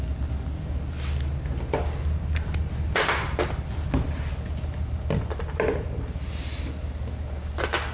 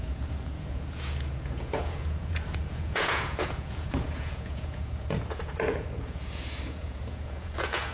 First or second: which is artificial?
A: second